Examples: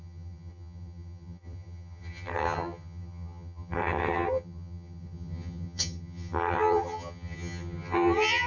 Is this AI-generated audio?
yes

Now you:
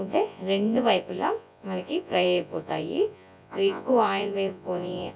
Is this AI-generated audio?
yes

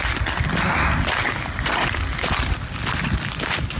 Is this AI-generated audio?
no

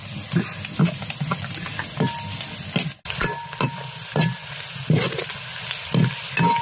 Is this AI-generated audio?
no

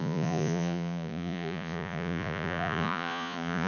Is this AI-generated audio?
yes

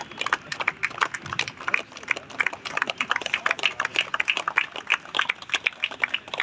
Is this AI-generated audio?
no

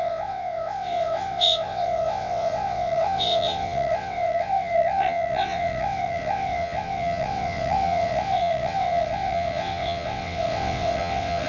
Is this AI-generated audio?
yes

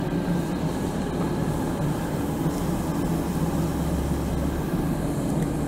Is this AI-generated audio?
no